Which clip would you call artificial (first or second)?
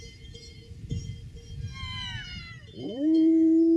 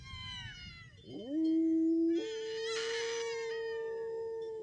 first